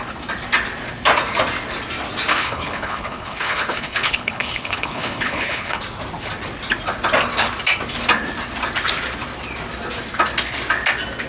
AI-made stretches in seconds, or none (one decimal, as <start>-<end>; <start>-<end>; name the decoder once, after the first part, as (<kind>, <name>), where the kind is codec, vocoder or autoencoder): 2.3-5.8 (codec, HILCodec)